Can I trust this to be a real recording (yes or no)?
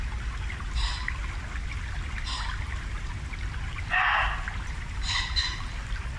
yes